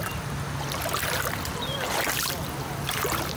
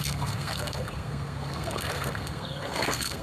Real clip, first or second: first